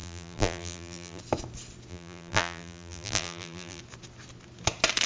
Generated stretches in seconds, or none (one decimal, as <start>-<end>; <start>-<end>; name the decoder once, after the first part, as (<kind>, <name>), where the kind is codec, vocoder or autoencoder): 0.0-1.2 (vocoder, BigVGAN v2); 1.9-3.8